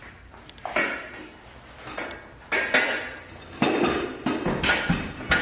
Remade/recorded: recorded